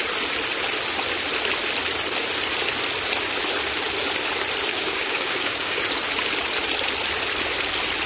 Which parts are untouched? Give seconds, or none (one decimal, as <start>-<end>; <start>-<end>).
0.0-4.7; 5.8-8.1